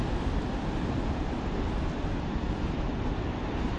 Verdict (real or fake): real